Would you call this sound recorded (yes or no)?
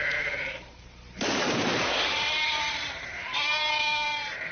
no